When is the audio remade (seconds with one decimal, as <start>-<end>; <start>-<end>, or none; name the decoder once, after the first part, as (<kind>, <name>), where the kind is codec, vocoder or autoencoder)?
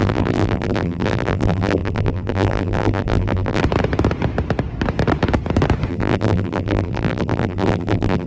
0.0-3.6 (vocoder, BigVGAN v2); 5.9-8.3